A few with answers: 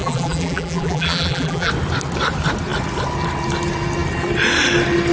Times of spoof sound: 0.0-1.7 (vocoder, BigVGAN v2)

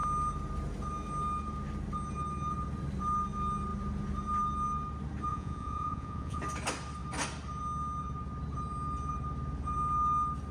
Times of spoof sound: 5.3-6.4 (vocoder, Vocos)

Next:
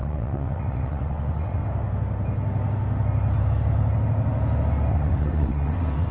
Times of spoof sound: 0.0-1.6 (vocoder, WaveNeXt); 4.9-6.1